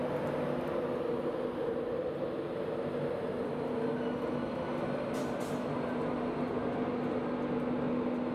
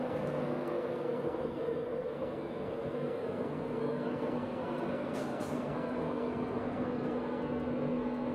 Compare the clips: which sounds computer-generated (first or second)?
second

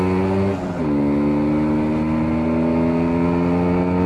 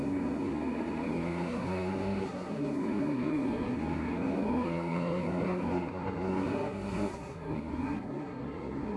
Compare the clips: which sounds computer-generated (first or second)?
second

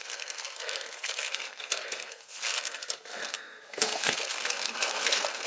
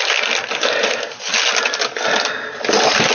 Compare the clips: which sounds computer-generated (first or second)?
first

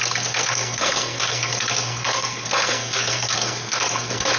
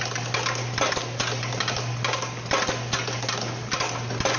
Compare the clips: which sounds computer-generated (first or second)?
first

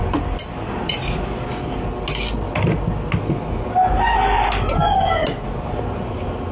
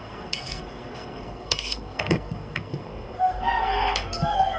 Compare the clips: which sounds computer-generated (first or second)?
second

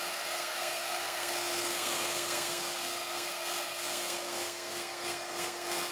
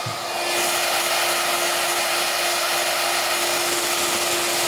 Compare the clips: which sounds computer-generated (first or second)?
first